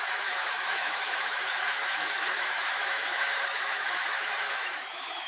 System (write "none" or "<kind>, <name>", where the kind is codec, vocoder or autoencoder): autoencoder, DAC-VAE